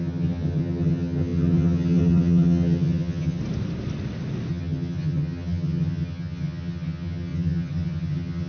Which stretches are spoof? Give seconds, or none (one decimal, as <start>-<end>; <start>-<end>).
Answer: 0.0-3.4; 4.5-8.5